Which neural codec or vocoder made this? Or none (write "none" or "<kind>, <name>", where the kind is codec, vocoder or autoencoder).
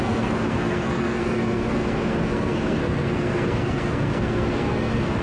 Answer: codec, SNAC